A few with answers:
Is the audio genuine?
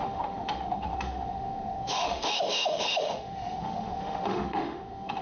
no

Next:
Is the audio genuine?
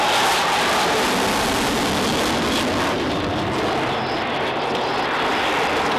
yes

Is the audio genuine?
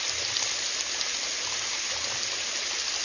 yes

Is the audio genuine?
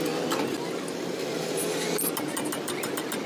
yes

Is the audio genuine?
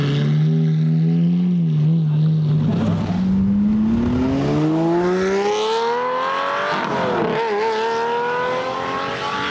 yes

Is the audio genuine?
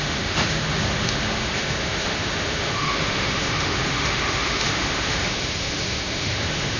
no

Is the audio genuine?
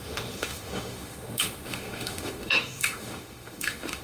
no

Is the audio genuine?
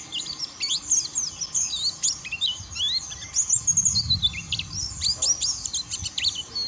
yes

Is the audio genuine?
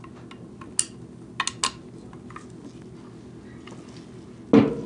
yes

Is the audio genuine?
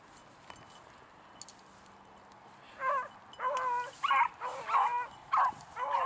yes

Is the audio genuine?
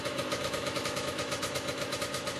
no